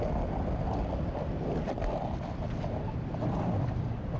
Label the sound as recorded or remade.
recorded